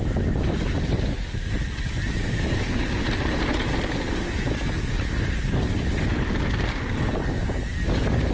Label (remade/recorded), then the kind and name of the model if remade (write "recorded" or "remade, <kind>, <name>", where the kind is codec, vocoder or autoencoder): recorded